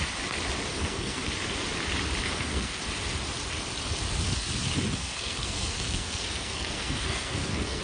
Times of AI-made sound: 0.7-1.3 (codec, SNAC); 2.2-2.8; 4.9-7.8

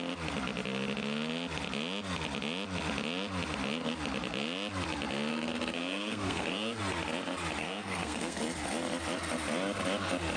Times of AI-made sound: 5.3-6.8 (codec, SNAC); 7.6-8.4

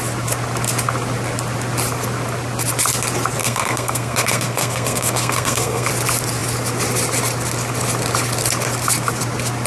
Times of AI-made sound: 3.4-5.9 (codec, SNAC)

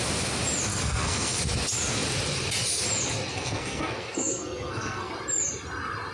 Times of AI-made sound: 0.7-1.4 (codec, SNAC); 3.3-5.1

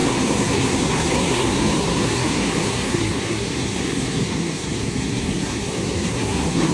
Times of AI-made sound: 0.0-6.7 (codec, SNAC)

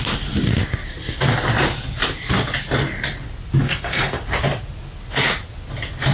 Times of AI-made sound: 3.6-4.2 (codec, SNAC)

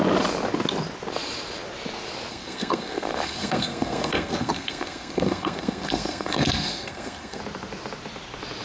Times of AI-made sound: 2.3-7.4 (codec, SNAC)

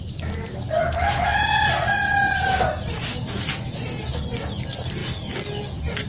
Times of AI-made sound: none